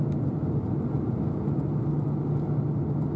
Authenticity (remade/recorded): recorded